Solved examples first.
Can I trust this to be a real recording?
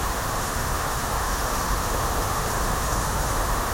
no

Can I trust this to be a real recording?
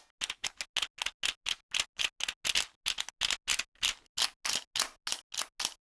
yes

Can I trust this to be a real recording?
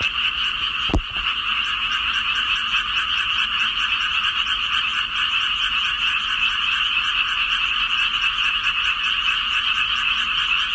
yes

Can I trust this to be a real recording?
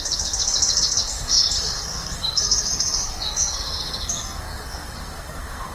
no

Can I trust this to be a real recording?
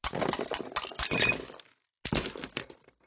yes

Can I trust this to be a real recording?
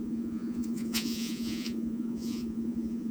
no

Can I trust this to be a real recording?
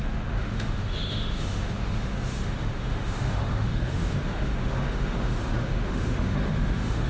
no